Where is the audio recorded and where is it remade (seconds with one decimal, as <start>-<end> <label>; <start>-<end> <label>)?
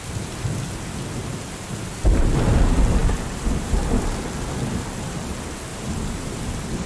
0.0-3.0 recorded; 3.0-3.8 remade; 3.8-5.7 recorded; 5.7-6.4 remade; 6.4-6.9 recorded